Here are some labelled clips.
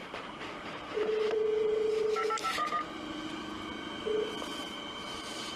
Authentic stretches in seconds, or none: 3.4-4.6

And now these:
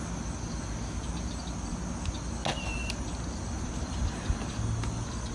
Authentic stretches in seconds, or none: 0.0-5.3

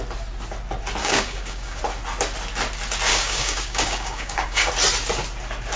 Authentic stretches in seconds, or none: 0.0-1.0; 1.8-3.1; 4.7-5.8

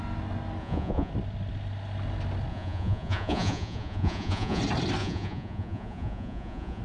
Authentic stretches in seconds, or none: 0.0-0.6; 1.1-2.5; 4.6-5.0

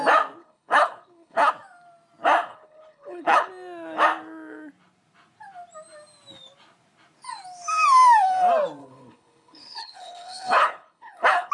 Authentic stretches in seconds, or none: 0.0-0.4; 1.5-2.5; 3.5-8.8

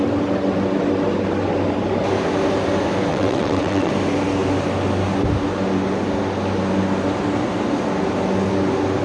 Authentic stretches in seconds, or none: 0.0-3.1; 3.9-9.0